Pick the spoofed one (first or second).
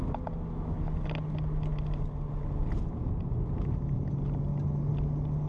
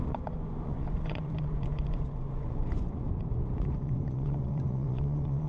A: second